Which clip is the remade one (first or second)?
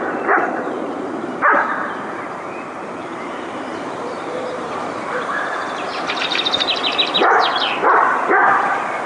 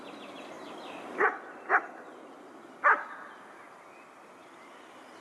first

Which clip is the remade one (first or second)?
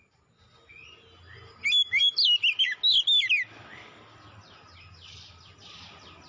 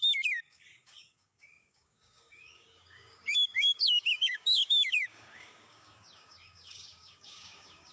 second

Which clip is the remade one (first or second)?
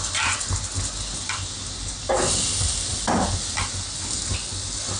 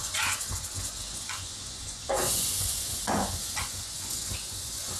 second